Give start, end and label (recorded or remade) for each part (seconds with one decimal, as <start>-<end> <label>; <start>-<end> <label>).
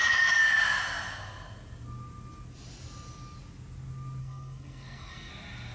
0.0-4.2 recorded; 4.2-5.3 remade; 5.3-5.7 recorded